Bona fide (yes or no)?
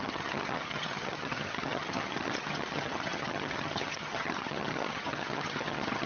no